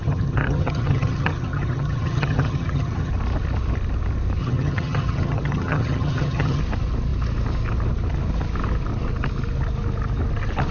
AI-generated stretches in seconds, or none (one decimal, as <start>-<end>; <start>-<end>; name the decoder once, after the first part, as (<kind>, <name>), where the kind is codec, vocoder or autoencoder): 0.0-3.1 (vocoder, HiFi-GAN); 4.4-6.6